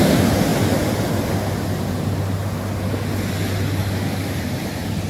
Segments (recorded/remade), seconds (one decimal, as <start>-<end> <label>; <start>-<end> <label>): 0.0-3.8 recorded; 3.8-4.4 remade; 4.4-5.1 recorded